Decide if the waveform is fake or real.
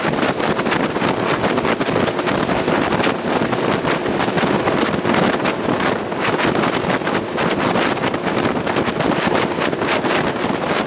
real